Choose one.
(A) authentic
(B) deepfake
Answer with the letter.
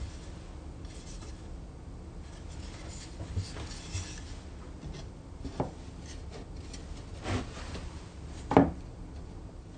A